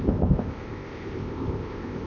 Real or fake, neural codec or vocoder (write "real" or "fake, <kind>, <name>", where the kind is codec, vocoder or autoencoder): fake, codec, ZipCodec